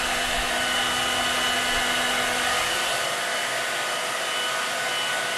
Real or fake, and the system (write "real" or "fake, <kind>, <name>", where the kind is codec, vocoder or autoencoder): real